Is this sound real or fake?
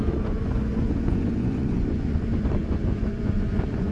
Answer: fake